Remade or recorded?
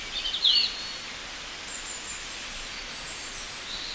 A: recorded